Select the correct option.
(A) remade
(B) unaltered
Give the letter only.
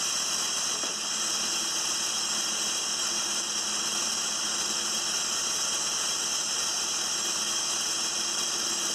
B